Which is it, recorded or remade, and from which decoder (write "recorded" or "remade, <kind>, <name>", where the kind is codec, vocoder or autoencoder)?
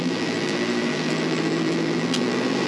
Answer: remade, vocoder, BigVGAN v2